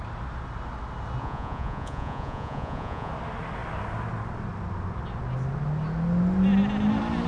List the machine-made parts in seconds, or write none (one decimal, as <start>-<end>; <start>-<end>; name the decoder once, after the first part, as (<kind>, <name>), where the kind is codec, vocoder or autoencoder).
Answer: 1.2-3.1 (vocoder, Vocos)